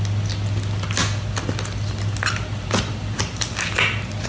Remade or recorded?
recorded